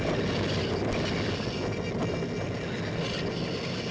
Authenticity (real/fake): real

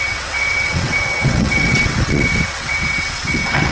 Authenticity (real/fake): fake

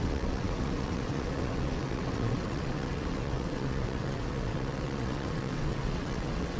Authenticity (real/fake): fake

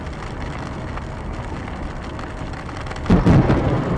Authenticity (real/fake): real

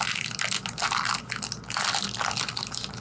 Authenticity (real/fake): real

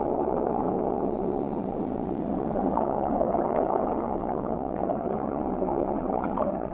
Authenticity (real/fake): fake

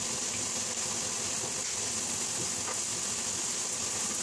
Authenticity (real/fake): real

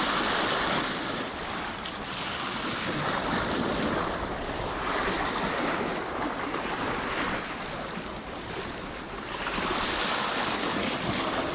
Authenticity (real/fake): real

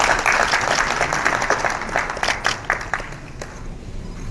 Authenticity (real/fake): real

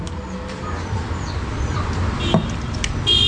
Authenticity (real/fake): real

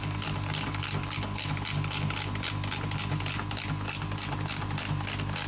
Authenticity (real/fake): real